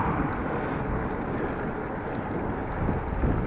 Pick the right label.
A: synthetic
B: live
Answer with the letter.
B